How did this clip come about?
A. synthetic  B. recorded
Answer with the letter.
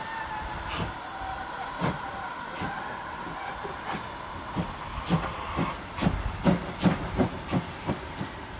B